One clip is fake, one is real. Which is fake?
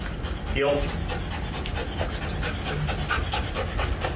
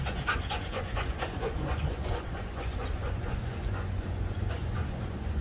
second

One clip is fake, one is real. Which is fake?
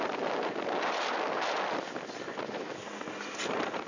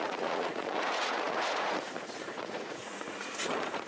second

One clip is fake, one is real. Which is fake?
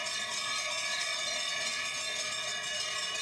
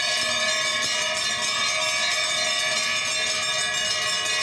first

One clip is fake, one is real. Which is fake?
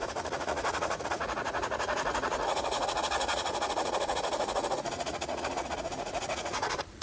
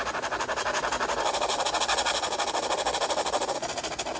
first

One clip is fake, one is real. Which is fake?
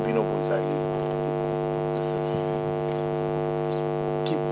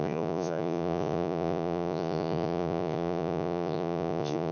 second